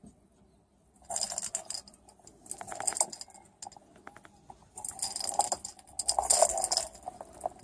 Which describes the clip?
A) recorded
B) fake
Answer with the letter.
A